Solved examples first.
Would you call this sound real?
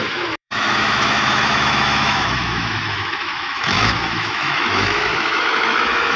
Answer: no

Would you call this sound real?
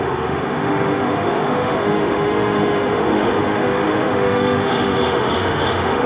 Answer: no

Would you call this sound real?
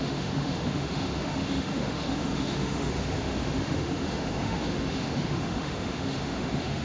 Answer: no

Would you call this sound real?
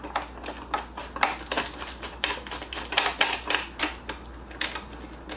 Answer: yes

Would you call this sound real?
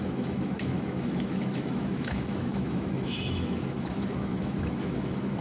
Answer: no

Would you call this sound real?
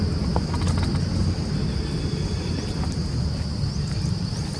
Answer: yes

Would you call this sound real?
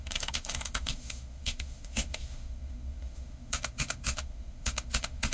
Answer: no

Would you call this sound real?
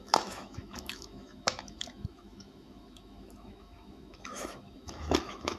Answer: no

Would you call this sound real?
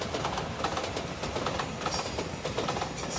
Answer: yes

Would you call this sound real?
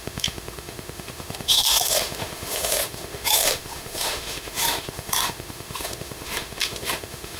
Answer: no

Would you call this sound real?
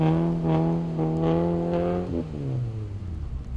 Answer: yes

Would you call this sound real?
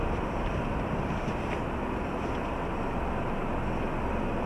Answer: yes